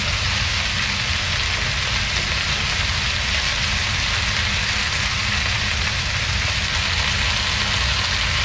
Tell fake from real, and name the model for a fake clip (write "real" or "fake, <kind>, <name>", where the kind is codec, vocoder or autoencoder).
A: real